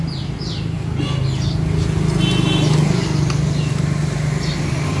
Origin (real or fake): real